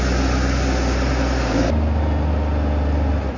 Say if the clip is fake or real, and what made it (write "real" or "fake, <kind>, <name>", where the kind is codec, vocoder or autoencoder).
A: real